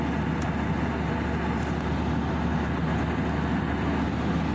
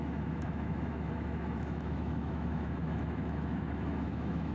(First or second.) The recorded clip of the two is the first